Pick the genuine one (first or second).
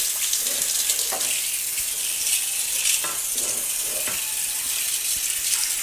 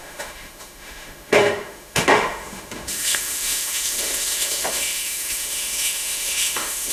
first